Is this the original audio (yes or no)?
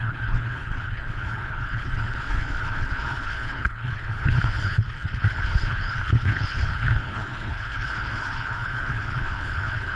no